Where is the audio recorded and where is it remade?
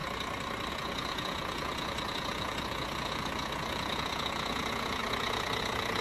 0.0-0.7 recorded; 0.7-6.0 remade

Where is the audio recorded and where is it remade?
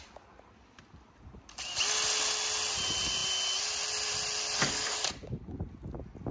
0.0-6.3 recorded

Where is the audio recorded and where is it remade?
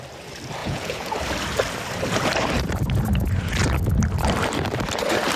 0.0-0.6 recorded; 0.6-1.1 remade; 1.1-5.4 recorded